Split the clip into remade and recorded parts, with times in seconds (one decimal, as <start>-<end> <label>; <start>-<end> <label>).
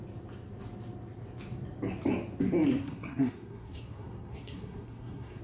0.0-2.7 recorded; 2.7-5.4 remade